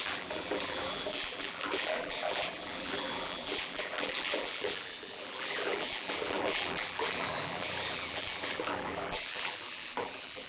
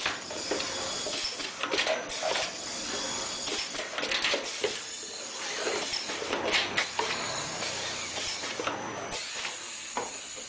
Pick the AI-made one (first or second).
first